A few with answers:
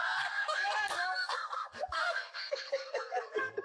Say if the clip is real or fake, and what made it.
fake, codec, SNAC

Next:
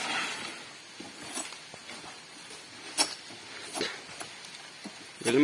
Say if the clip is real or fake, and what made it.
real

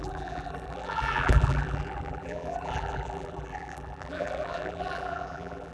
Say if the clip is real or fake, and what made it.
fake, vocoder, BigVGAN v2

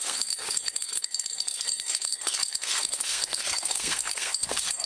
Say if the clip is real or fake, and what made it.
fake, codec, SNAC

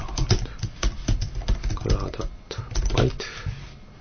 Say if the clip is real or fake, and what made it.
real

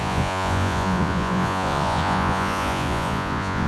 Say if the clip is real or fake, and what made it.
fake, vocoder, Vocos